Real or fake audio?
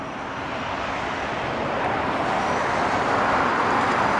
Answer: real